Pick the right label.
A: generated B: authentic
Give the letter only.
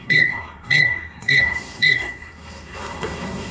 A